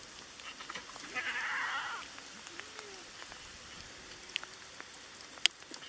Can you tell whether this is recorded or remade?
recorded